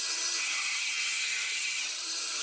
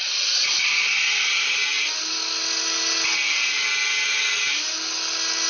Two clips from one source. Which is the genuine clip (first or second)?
second